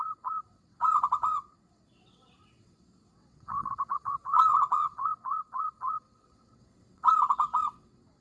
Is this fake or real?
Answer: fake